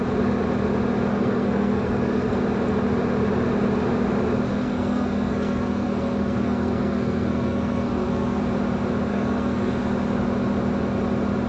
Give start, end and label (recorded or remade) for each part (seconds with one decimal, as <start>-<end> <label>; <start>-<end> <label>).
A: 0.0-1.1 recorded; 1.1-2.4 remade; 2.4-4.5 recorded; 4.5-8.4 remade; 8.4-9.1 recorded; 9.1-9.7 remade; 9.7-11.5 recorded